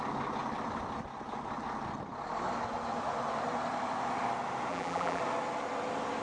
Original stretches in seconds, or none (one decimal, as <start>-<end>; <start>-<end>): 0.0-4.7; 5.2-6.2